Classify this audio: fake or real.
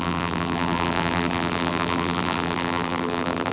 fake